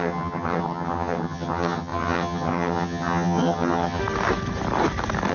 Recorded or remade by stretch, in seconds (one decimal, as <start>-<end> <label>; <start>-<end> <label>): 0.0-4.0 remade; 4.0-5.3 recorded